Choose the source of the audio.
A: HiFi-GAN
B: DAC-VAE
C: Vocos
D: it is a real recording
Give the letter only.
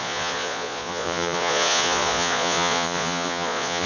C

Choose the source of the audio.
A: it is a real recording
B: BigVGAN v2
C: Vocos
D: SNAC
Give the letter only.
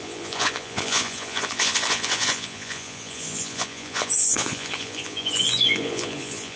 C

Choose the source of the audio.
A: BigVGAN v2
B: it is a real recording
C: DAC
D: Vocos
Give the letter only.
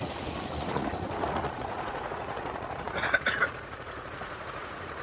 D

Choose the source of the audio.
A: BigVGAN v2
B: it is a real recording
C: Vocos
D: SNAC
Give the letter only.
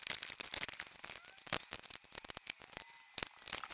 B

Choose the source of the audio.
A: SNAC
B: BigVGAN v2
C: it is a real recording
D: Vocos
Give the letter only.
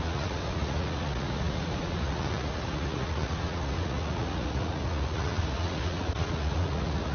D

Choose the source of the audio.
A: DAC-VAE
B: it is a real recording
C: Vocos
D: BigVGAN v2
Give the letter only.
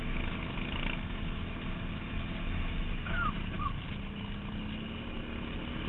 B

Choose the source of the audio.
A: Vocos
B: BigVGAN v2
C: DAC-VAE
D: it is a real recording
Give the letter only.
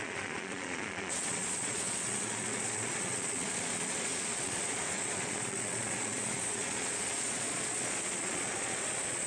A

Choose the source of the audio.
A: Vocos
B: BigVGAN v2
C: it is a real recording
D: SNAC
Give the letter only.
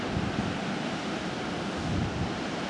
C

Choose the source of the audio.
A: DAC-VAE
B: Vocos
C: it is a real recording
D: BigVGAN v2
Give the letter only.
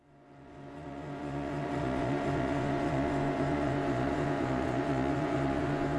B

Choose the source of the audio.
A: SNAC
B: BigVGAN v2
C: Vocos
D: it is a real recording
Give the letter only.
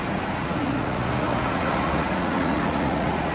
C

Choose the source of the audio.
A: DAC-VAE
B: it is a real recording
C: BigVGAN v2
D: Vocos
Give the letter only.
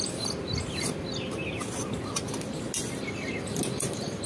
B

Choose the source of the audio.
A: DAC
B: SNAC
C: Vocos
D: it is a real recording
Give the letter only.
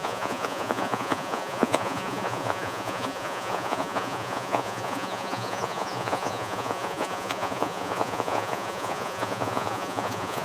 C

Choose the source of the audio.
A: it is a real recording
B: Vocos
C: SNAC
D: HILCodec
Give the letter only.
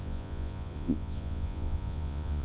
B